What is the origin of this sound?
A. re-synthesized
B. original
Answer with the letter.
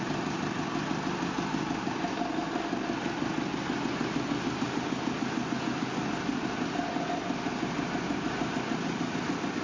B